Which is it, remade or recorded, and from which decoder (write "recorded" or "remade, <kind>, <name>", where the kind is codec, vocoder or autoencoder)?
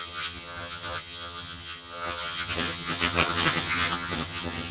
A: remade, vocoder, HiFi-GAN